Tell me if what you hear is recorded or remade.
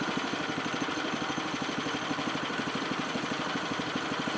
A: recorded